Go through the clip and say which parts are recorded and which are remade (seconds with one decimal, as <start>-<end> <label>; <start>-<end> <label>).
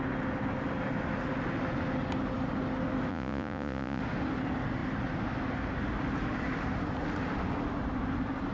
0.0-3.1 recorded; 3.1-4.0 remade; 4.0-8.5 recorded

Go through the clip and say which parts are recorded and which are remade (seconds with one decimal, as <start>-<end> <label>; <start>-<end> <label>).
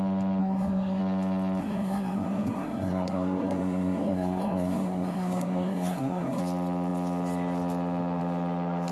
0.0-0.4 recorded; 0.4-1.0 remade; 1.0-1.6 recorded; 1.6-6.4 remade; 6.4-8.9 recorded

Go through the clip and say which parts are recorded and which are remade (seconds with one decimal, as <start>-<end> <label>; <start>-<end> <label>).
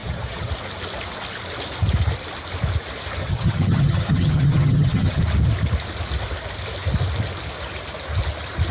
0.0-0.5 remade; 0.5-3.2 recorded; 3.2-5.2 remade; 5.2-8.7 recorded